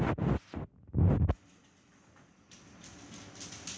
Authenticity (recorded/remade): recorded